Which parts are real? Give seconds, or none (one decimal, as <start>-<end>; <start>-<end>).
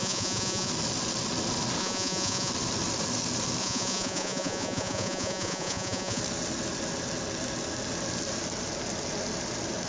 0.7-1.8; 2.5-3.6; 6.2-9.9